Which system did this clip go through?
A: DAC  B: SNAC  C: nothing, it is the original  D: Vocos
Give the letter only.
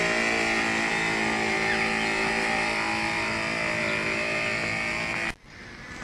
C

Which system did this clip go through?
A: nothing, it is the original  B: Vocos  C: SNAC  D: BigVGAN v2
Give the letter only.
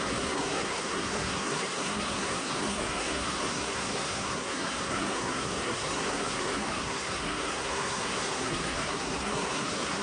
C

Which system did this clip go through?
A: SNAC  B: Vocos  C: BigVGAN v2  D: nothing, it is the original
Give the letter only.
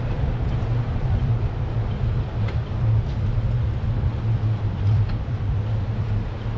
D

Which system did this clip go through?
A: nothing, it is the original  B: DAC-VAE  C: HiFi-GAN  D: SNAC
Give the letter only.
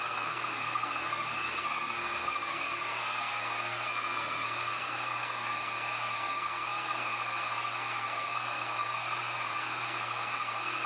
D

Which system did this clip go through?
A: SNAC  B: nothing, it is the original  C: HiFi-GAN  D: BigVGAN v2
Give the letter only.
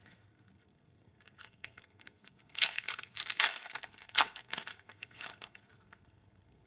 A